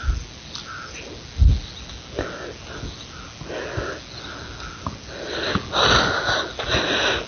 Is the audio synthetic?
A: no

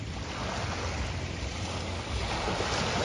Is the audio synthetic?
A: no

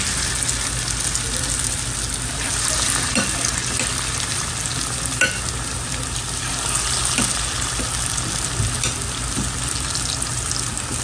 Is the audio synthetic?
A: no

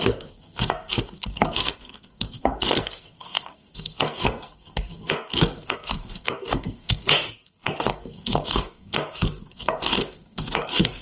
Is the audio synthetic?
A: yes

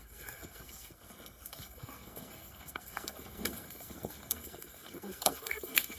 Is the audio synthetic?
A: yes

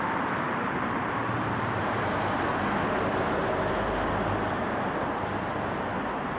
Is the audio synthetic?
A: no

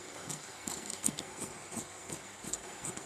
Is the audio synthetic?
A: yes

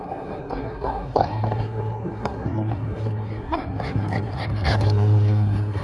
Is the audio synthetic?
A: yes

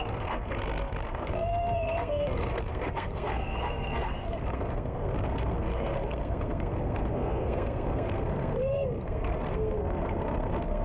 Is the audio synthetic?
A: yes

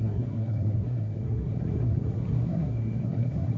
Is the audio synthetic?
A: yes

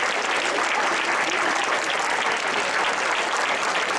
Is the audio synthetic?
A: no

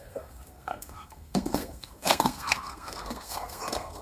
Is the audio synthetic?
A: yes